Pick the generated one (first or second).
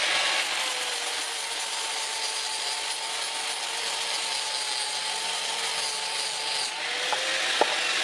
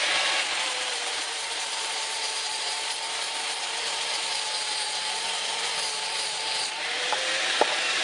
second